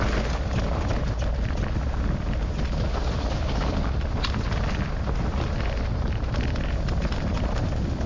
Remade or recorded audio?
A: recorded